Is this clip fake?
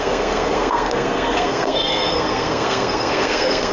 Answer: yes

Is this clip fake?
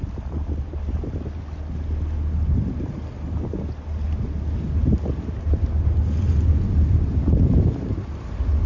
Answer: no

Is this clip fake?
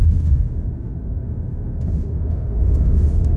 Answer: yes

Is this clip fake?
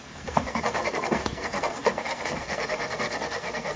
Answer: yes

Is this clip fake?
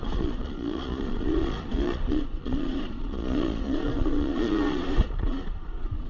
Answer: yes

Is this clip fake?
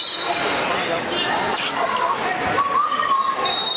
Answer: no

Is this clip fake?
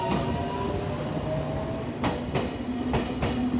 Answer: no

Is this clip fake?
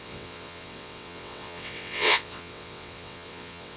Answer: yes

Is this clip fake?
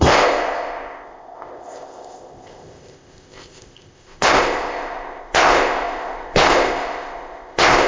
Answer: yes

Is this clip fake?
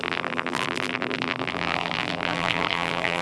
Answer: yes